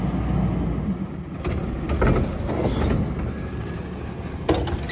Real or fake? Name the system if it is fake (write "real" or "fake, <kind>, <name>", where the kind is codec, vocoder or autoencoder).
real